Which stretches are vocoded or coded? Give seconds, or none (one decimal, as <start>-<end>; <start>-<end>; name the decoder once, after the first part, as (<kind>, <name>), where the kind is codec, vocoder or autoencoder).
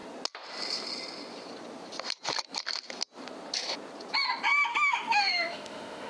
4.7-6.1 (autoencoder, DAC-VAE)